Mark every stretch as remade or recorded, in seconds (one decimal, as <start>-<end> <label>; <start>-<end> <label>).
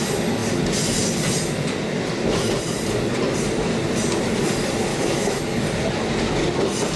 0.0-4.9 recorded; 4.9-5.4 remade; 5.4-7.0 recorded